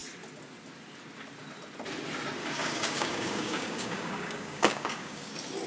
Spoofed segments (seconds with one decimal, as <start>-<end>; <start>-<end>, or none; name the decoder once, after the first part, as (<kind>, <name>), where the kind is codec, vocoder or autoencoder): 2.4-5.3 (codec, DAC)

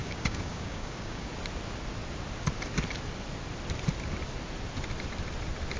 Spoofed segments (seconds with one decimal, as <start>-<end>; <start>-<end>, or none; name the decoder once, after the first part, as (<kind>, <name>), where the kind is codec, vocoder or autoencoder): 0.0-1.3 (codec, DAC)

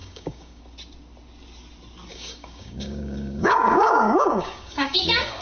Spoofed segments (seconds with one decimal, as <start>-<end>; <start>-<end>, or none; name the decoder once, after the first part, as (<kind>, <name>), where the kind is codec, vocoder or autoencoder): 0.0-0.6 (codec, DAC); 2.1-5.4

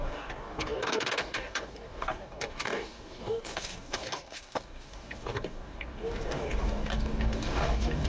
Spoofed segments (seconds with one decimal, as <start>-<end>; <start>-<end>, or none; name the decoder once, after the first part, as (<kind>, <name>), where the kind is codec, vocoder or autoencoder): 0.0-8.1 (codec, DAC)

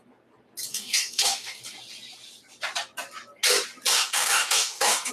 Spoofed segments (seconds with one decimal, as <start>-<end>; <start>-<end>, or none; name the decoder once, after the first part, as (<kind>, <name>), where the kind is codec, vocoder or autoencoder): 0.7-1.6 (codec, DAC); 3.9-5.1

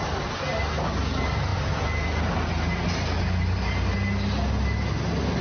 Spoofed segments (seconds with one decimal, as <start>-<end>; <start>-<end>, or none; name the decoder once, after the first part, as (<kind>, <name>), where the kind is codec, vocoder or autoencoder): none

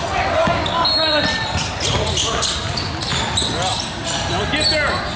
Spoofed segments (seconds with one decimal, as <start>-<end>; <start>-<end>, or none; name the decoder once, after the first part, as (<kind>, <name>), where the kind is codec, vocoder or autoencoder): none